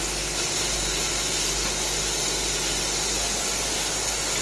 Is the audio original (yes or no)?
yes